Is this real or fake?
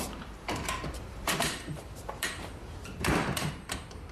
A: fake